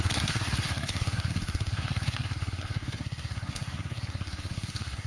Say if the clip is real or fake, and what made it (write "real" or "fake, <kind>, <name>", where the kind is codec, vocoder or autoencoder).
fake, codec, SNAC